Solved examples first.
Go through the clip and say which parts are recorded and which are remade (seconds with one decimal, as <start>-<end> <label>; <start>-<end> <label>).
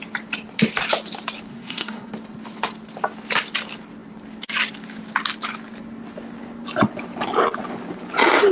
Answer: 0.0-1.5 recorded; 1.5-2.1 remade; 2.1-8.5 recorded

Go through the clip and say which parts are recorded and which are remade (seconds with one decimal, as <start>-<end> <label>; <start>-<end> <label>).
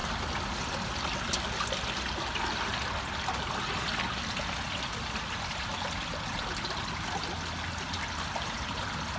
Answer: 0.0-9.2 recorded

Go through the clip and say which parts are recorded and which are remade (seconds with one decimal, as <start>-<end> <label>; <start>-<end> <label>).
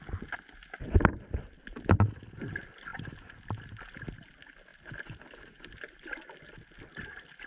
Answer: 0.0-7.5 recorded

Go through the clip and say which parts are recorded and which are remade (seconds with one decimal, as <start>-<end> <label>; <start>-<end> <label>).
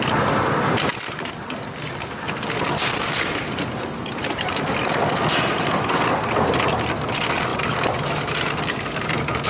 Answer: 0.0-9.5 recorded